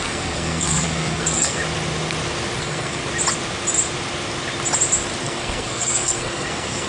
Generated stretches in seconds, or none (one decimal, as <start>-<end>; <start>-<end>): 0.0-1.6; 2.6-3.0; 5.2-6.9